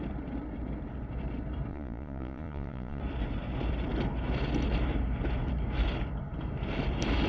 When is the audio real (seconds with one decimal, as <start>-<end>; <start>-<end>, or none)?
0.0-1.7; 3.0-7.3